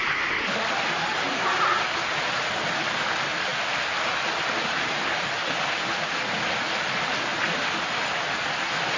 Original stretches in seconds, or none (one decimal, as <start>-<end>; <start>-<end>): 0.0-9.0